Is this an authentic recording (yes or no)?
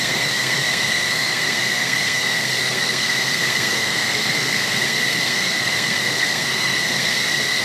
no